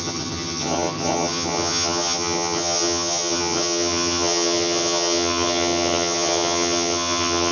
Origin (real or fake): fake